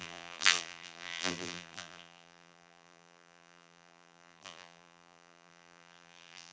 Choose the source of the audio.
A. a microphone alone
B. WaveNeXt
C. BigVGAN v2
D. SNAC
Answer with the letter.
C